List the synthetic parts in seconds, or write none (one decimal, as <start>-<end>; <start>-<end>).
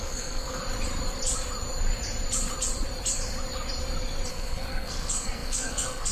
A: 0.0-0.6; 4.3-6.1